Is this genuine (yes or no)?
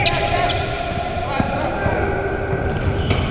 yes